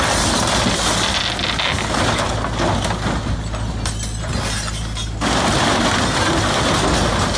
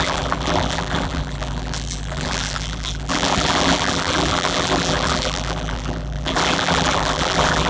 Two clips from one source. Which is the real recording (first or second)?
first